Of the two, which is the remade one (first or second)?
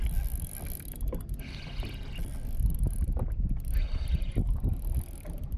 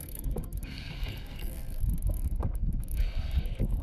second